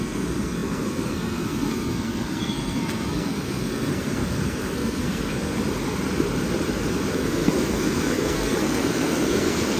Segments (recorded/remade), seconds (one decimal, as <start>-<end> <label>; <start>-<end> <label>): 0.0-5.6 remade; 5.6-7.1 recorded; 7.1-9.8 remade